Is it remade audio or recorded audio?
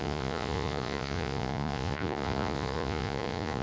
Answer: remade